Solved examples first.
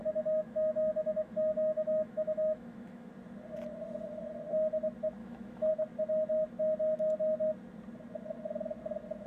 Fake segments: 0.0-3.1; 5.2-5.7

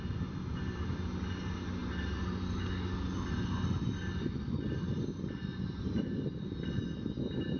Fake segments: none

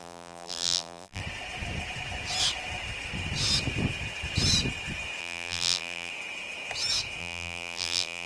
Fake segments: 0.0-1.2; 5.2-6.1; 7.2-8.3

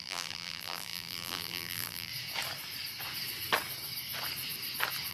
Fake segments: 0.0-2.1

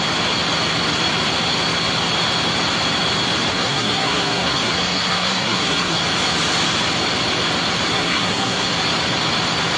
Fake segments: 3.5-6.0; 7.9-8.7

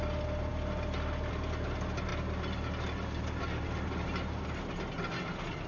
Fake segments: none

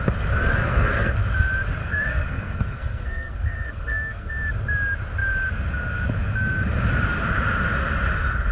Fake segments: 0.5-1.1; 1.8-4.3